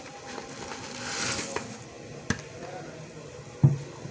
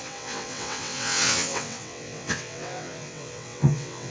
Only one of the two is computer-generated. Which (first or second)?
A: second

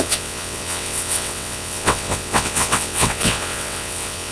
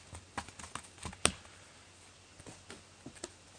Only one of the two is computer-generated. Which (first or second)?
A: first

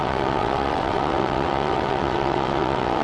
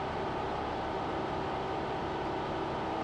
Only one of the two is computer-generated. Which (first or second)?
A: first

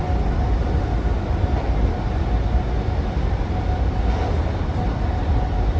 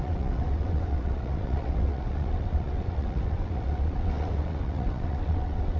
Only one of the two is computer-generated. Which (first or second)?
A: second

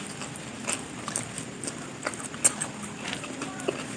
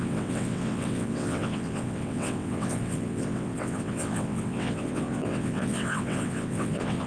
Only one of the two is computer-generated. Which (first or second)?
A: second